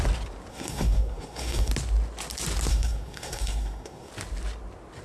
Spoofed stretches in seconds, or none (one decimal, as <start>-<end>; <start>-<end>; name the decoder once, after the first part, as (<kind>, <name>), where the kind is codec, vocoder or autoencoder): 0.5-1.7 (codec, SNAC); 2.7-4.1